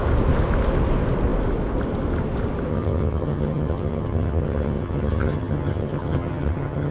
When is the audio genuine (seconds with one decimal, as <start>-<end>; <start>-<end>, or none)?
0.0-2.7